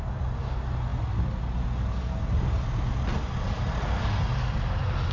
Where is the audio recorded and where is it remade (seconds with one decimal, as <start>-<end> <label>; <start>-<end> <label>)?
0.0-5.1 recorded